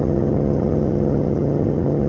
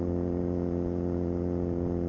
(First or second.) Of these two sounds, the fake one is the first